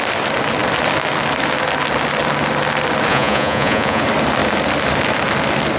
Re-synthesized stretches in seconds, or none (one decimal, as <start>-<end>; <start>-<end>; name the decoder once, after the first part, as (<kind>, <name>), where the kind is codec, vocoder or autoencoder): 3.1-4.0 (vocoder, Vocos)